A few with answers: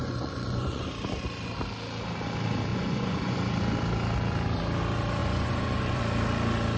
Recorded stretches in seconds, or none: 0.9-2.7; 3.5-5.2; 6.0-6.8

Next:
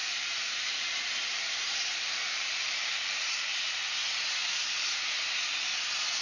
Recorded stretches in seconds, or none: 3.7-4.4; 5.0-6.2